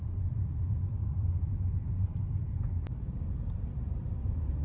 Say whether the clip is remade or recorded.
remade